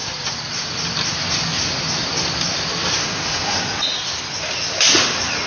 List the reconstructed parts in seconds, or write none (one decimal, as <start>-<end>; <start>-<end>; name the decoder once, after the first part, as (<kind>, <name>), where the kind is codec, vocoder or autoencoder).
3.0-3.6 (autoencoder, DAC-VAE)